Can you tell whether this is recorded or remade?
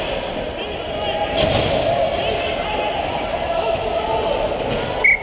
recorded